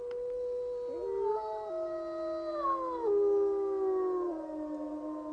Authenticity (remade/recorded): recorded